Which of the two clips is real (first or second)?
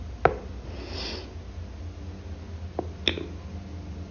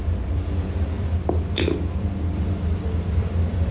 first